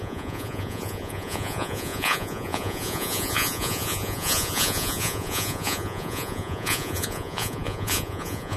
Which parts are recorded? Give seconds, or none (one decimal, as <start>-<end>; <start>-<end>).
none